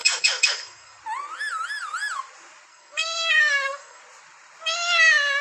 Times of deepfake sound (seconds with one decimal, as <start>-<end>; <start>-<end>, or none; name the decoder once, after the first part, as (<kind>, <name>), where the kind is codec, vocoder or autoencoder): 0.0-1.0 (codec, SNAC); 2.7-4.0